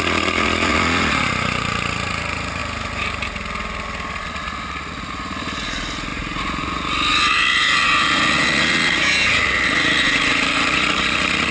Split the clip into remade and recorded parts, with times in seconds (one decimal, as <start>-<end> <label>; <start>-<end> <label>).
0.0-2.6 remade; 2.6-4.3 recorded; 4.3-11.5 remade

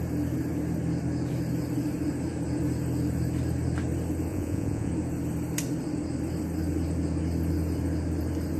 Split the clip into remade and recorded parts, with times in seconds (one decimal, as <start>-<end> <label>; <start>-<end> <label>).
0.0-4.3 recorded; 4.3-4.9 remade; 4.9-8.6 recorded

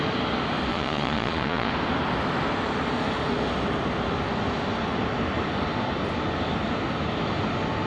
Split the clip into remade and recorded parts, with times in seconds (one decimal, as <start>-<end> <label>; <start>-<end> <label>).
0.0-0.7 recorded; 0.7-1.7 remade; 1.7-7.9 recorded